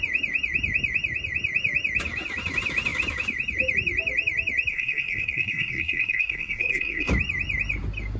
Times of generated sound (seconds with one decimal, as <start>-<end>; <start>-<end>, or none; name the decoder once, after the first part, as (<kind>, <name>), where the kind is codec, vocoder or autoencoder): 4.7-7.1 (codec, SNAC)